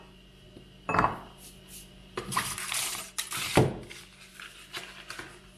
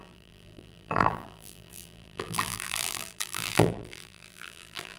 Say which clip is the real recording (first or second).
first